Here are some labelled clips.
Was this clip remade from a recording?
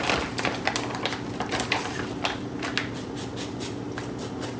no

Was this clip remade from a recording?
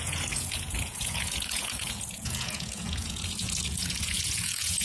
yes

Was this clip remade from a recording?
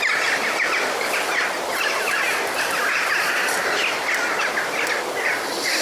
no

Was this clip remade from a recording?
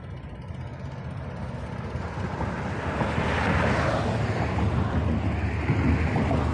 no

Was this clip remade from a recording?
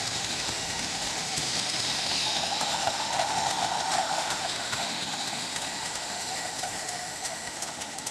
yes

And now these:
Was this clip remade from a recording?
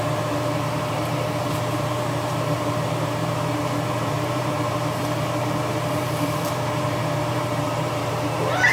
yes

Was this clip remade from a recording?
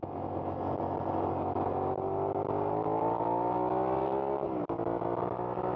no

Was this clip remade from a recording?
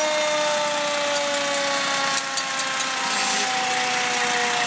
no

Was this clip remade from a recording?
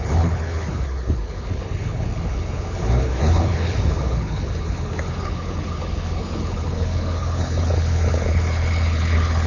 yes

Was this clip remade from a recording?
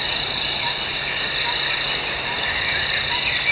no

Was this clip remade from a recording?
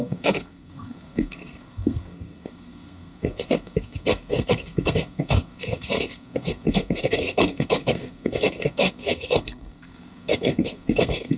yes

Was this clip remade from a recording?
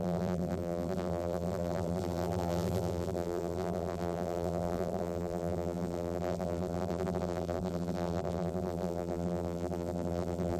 yes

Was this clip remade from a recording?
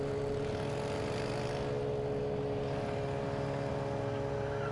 no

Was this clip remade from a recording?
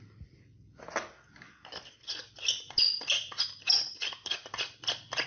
no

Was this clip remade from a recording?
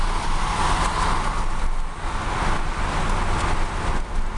no